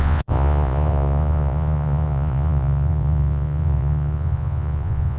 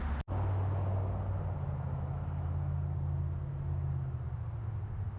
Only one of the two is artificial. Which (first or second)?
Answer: first